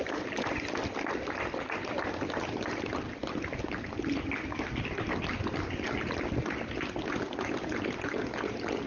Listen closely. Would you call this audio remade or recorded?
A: recorded